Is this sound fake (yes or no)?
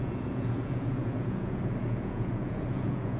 yes